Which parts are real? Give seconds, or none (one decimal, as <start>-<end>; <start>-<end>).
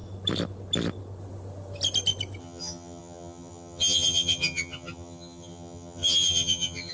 0.0-2.4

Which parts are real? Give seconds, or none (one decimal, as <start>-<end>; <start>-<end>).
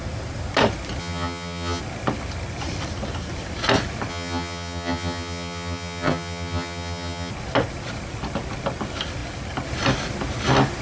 0.0-1.0; 1.8-4.1; 7.3-10.8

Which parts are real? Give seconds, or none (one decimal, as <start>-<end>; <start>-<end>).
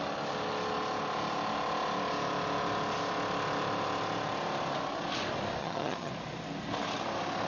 0.0-5.6; 6.1-7.5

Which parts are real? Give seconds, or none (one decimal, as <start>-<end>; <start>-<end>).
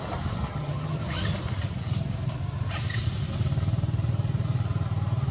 0.0-0.5; 1.1-5.3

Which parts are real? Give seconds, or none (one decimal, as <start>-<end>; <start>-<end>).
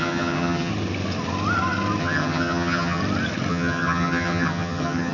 0.7-2.0; 3.0-3.5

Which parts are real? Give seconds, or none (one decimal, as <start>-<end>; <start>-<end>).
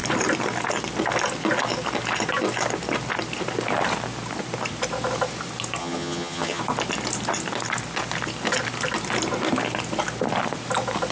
0.0-5.8; 6.6-11.1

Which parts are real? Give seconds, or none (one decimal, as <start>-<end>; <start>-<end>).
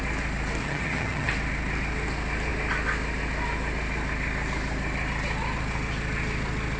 0.0-0.6; 1.3-6.8